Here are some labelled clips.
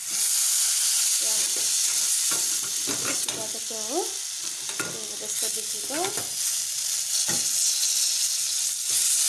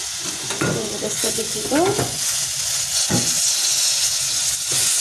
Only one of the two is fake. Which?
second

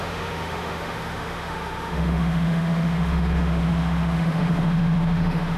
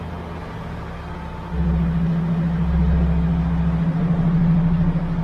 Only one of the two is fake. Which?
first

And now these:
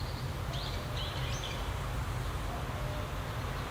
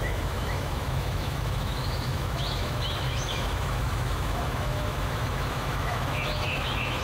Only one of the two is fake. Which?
second